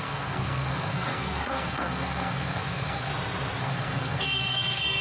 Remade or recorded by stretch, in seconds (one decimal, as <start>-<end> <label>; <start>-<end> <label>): 0.0-3.1 remade; 3.1-3.6 recorded; 3.6-5.0 remade

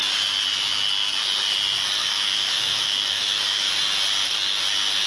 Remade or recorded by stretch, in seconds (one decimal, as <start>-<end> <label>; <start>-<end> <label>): 0.0-2.0 recorded; 2.0-3.7 remade; 3.7-5.1 recorded

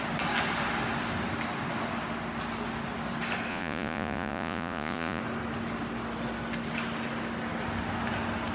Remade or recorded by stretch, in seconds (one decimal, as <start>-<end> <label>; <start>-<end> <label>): 0.0-3.5 recorded; 3.5-5.2 remade; 5.2-8.5 recorded

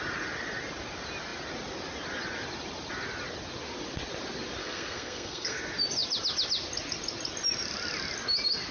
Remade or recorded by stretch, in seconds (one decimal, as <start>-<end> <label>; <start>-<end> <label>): 0.0-4.6 recorded; 4.6-5.6 remade; 5.6-8.7 recorded

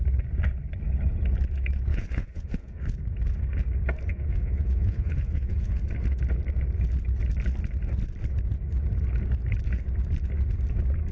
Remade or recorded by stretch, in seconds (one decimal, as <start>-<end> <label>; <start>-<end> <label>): 0.0-1.9 recorded; 1.9-2.8 remade; 2.8-4.1 recorded; 4.1-5.8 remade; 5.8-11.1 recorded